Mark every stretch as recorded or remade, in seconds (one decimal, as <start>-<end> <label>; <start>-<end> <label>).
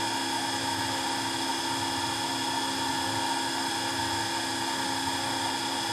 0.0-5.9 recorded